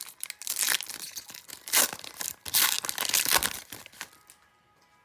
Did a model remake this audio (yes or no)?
no